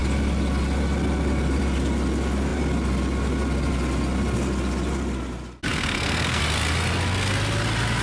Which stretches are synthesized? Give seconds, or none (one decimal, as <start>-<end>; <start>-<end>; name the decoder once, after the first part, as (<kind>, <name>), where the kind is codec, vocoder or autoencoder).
5.7-6.4 (codec, SNAC)